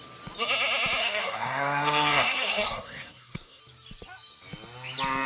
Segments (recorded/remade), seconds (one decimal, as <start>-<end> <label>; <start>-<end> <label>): 0.0-1.0 recorded; 1.0-3.6 remade; 3.6-5.3 recorded